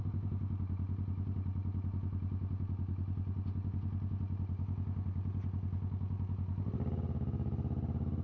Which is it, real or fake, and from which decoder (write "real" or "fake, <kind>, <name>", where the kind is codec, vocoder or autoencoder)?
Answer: real